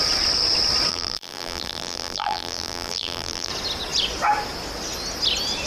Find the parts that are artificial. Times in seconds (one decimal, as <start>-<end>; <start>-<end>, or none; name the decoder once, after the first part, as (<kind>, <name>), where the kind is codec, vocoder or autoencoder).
0.9-3.5 (vocoder, BigVGAN v2)